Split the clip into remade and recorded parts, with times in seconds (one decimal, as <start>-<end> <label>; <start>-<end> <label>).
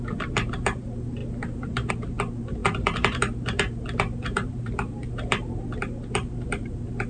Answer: 0.0-7.1 remade